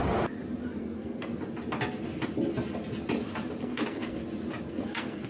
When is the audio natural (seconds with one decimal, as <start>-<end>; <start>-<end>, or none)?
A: 0.0-0.8; 1.3-3.6; 4.2-4.7